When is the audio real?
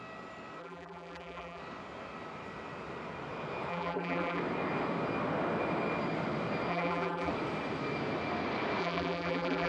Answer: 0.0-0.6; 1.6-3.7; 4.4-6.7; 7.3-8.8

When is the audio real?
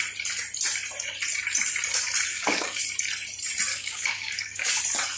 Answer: 0.0-2.3; 2.8-3.7; 4.8-5.2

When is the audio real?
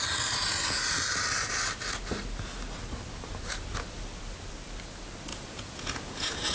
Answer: 0.0-5.3